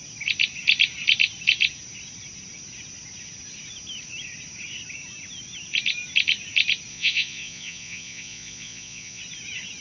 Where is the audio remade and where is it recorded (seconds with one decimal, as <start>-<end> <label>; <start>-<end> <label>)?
0.0-6.9 recorded; 6.9-9.2 remade; 9.2-9.8 recorded